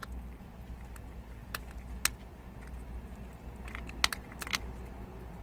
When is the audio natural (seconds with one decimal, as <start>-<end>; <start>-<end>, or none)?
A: 0.0-5.4